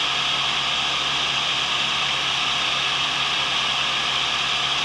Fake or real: real